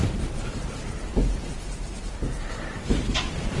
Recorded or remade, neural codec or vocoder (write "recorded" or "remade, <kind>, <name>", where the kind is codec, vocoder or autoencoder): recorded